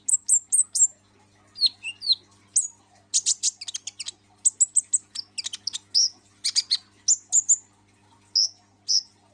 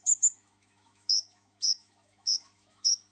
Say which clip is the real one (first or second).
first